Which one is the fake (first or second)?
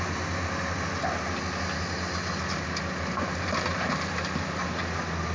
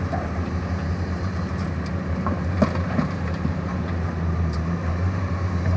second